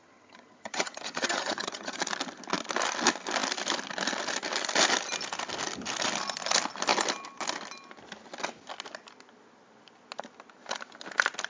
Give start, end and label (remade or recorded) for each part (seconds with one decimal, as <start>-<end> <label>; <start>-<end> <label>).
0.0-2.0 remade; 2.0-11.5 recorded